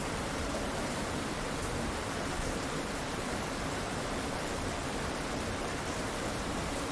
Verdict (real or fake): fake